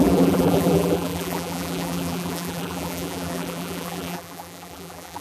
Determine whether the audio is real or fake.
fake